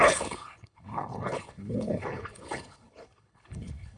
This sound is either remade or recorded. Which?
remade